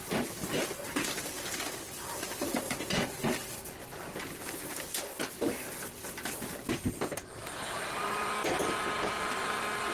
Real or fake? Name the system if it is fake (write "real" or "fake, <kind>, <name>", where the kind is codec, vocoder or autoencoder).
real